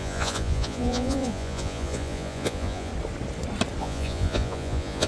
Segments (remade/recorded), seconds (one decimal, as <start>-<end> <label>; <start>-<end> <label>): 0.0-2.9 remade; 2.9-3.8 recorded; 3.8-5.1 remade